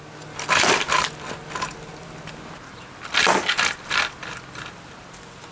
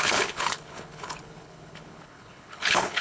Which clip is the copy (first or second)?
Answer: second